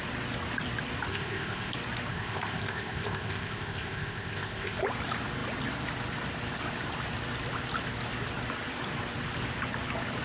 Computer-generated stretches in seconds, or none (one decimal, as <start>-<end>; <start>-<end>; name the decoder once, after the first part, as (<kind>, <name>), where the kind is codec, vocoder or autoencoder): 1.1-1.7 (codec, ZipCodec); 2.1-4.8